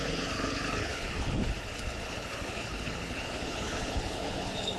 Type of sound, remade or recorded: remade